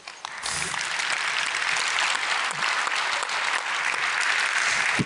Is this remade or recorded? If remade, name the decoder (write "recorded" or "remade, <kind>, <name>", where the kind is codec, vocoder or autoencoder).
recorded